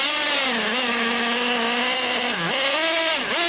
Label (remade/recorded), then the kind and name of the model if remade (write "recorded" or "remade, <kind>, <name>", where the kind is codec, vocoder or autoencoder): recorded